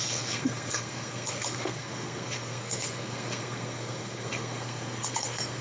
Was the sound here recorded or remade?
remade